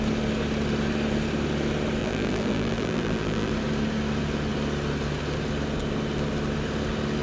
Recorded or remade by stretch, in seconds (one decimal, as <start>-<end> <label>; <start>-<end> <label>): 0.0-2.0 recorded; 2.0-3.5 remade; 3.5-7.2 recorded